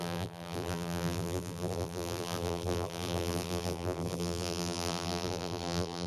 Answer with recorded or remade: remade